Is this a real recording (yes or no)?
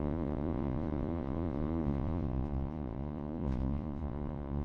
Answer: no